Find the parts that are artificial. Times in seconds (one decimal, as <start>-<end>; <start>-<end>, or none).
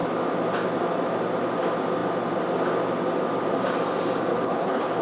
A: 4.3-5.0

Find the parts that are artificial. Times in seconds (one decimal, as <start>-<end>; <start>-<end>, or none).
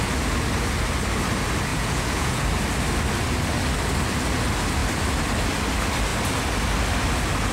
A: 1.7-2.4